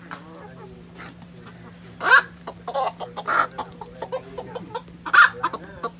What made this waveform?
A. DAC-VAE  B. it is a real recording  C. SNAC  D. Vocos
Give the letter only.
B